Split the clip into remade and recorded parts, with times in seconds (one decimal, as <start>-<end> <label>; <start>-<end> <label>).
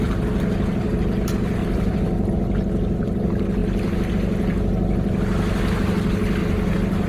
0.0-1.6 recorded; 1.6-2.3 remade; 2.3-6.4 recorded; 6.4-7.1 remade